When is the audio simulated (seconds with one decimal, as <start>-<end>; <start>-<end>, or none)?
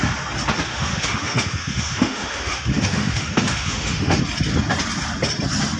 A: 0.7-4.2